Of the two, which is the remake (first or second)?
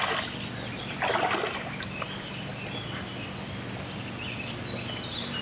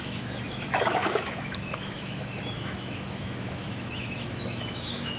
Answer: second